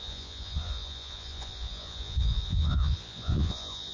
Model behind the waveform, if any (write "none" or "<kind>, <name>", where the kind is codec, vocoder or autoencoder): vocoder, Vocos